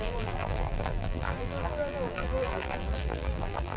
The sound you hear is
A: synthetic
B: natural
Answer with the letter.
A